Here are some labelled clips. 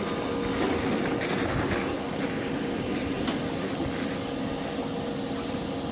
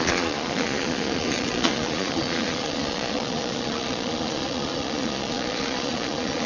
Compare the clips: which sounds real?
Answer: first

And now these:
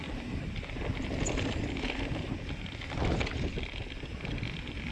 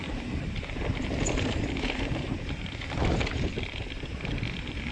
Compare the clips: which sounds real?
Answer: first